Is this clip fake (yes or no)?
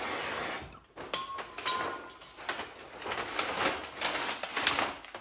no